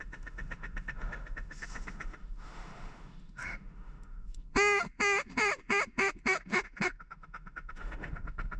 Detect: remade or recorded remade